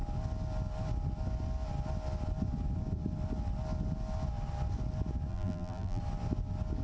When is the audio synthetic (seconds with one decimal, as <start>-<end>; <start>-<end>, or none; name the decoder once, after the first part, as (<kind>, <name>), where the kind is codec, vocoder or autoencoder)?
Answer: 5.3-6.0 (vocoder, BigVGAN v2)